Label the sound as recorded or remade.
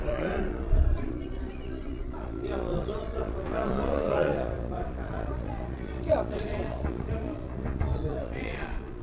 remade